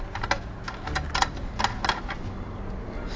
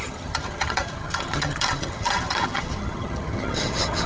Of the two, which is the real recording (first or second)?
first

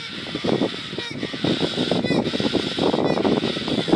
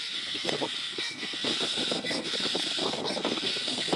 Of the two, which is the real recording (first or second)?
first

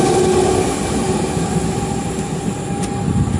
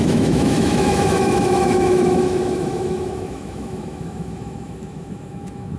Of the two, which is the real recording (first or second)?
first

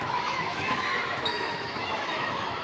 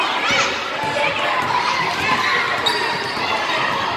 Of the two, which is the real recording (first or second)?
second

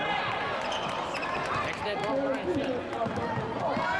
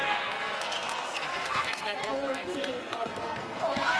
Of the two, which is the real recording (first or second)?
first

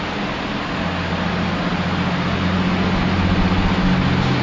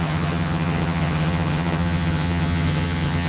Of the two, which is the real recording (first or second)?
first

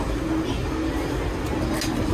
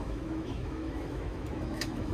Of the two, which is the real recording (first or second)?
first